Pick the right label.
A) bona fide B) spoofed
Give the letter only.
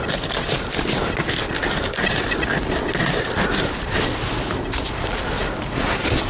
A